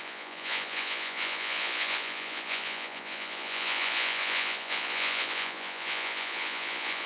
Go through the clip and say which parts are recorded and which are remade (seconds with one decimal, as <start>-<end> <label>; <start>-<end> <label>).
0.0-7.1 remade